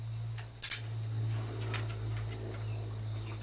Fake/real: real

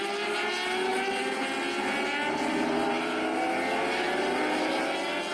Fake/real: real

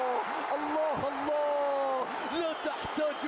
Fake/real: real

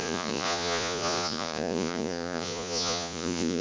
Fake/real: fake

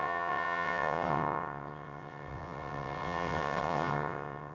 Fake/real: fake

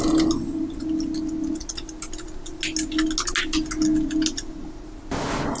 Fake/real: real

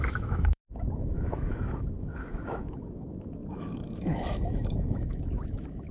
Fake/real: fake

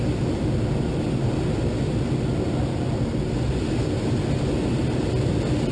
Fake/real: real